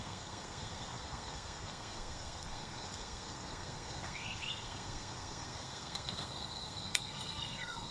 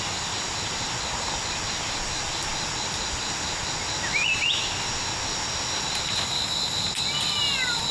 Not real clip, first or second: first